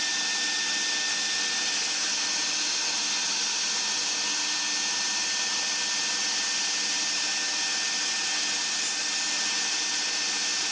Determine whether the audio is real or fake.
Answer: real